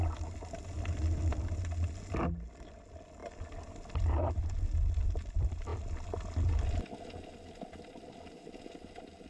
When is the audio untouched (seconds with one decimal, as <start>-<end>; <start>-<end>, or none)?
0.0-9.3